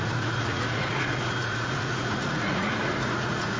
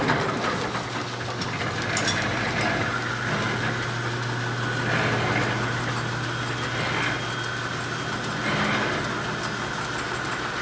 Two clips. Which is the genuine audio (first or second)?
second